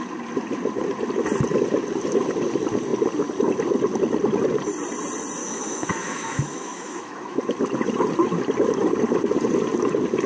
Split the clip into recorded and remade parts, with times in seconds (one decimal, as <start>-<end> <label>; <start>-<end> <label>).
0.0-5.4 recorded; 5.4-7.4 remade; 7.4-10.3 recorded